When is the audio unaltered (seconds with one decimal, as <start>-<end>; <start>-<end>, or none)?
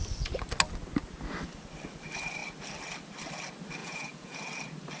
0.0-3.8; 4.4-5.0